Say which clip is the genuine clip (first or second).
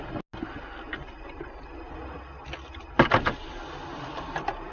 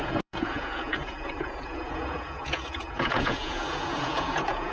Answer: first